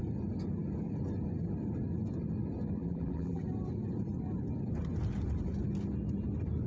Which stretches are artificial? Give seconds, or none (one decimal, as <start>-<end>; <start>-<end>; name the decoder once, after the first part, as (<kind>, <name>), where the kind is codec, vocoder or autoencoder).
2.8-3.4 (vocoder, BigVGAN v2)